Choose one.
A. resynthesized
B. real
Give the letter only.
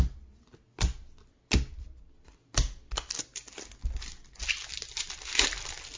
B